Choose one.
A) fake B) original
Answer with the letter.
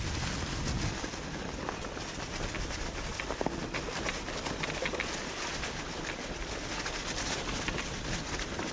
B